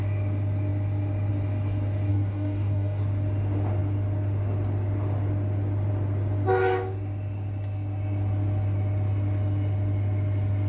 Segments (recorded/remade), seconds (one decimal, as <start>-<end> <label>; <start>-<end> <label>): 0.0-2.1 recorded; 2.1-3.0 remade; 3.0-10.7 recorded